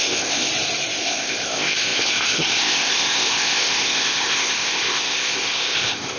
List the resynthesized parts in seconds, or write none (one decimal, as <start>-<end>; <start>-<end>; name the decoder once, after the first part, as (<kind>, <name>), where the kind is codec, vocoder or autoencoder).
0.0-0.5 (codec, ZipCodec); 1.0-6.2